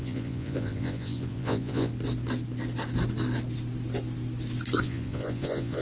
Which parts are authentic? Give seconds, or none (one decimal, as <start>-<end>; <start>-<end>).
1.9-4.8